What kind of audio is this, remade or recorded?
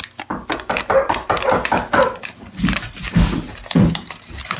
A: recorded